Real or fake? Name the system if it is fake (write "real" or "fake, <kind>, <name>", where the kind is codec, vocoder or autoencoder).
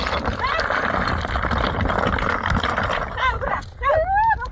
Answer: real